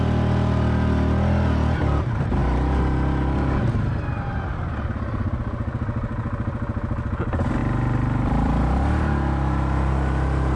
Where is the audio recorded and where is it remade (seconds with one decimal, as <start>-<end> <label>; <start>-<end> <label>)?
0.0-7.6 recorded; 7.6-8.6 remade; 8.6-10.6 recorded